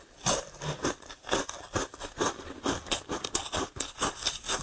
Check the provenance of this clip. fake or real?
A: real